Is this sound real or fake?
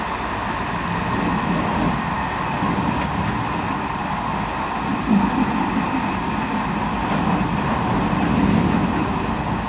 real